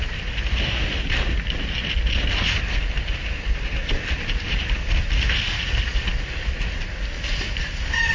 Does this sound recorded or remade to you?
recorded